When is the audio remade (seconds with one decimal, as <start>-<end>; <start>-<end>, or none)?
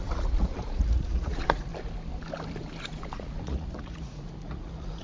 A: 0.0-1.7; 2.8-5.0